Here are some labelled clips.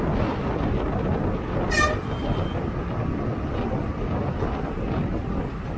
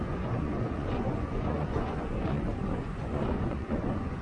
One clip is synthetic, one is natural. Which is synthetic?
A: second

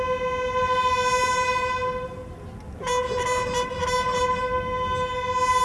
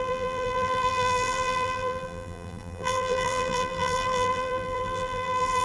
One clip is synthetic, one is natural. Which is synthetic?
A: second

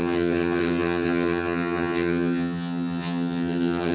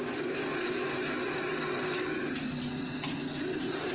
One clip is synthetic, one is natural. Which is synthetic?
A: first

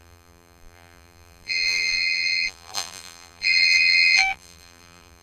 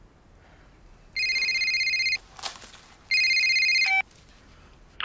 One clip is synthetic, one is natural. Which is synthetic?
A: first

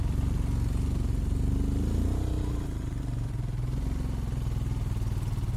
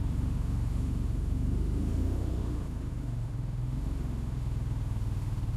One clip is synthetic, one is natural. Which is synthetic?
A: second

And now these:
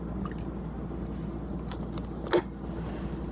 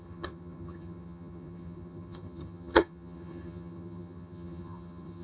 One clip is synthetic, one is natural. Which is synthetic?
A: second